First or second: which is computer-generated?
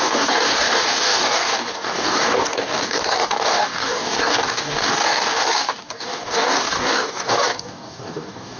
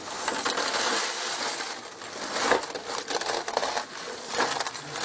first